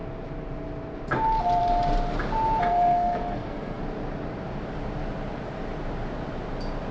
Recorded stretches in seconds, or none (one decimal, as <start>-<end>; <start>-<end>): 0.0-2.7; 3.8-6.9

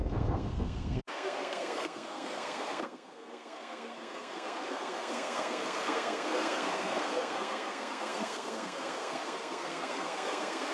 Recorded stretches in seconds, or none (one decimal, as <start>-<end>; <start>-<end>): none

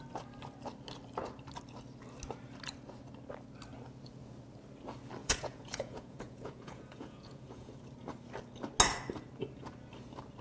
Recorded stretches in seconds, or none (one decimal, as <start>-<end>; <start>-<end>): 0.0-5.2; 7.7-10.4